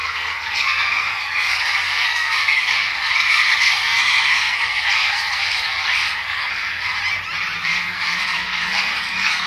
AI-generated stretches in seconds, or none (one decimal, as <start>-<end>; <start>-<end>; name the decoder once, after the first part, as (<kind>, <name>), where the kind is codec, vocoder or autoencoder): 0.0-7.0 (codec, SNAC); 7.6-9.5